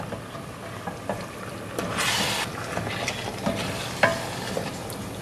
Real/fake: real